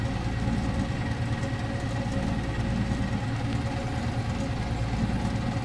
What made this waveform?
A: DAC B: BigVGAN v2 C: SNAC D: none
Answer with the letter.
D